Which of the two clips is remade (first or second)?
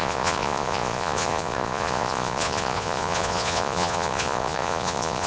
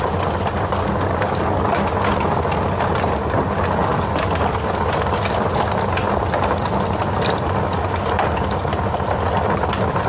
first